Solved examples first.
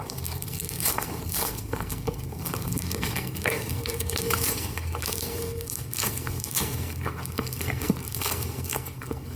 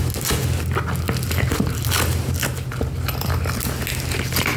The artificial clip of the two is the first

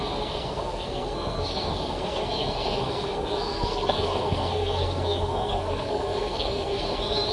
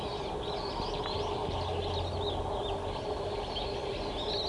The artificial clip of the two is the first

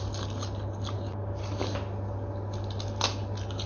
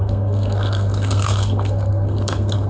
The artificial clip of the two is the second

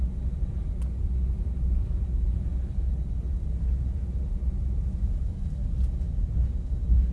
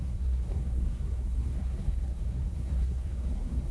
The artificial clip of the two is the second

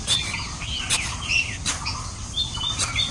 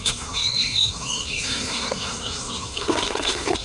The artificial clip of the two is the second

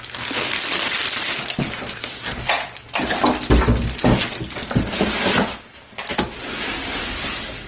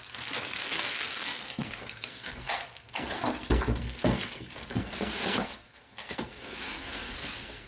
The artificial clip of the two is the second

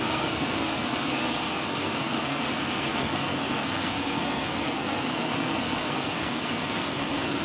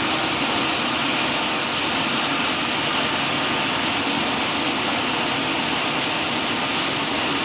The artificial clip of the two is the first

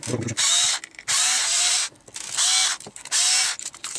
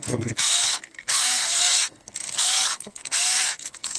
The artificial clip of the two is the second